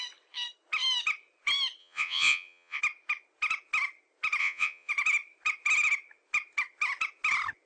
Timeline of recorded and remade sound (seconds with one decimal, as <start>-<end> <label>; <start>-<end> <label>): 0.0-1.8 recorded; 1.8-2.8 remade; 2.8-4.4 recorded; 4.4-4.9 remade; 4.9-7.7 recorded